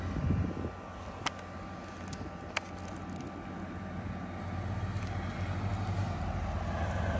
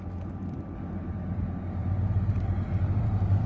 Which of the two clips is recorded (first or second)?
first